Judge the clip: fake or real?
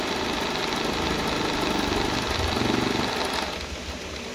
real